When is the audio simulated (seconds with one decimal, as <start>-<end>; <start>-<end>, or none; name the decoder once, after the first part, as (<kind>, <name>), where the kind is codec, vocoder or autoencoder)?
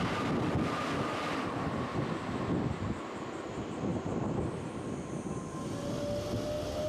none